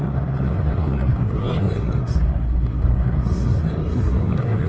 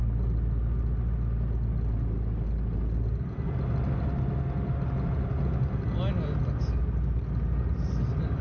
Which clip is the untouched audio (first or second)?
second